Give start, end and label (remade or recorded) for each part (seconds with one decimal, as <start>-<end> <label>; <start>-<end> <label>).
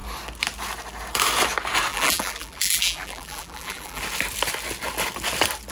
0.0-1.9 recorded; 1.9-4.0 remade; 4.0-5.7 recorded